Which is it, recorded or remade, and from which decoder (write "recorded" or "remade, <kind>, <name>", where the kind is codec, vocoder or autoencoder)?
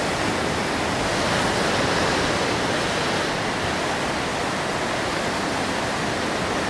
recorded